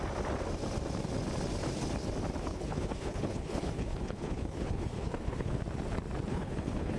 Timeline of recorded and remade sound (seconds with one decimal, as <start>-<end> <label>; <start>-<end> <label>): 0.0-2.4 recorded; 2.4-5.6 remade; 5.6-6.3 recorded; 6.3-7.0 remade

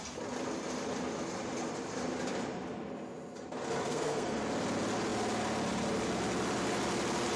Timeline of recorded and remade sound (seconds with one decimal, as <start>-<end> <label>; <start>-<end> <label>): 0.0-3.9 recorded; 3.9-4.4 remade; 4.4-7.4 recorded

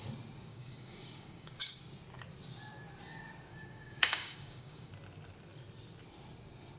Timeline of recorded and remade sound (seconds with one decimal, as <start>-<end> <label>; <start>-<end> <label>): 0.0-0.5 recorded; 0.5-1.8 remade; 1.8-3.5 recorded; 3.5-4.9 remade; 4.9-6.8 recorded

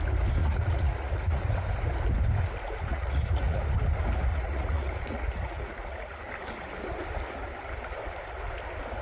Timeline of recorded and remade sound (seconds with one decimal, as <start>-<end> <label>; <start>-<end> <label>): 0.0-0.4 recorded; 0.4-1.5 remade; 1.5-2.9 recorded; 2.9-3.6 remade; 3.6-4.3 recorded; 4.3-6.3 remade; 6.3-9.0 recorded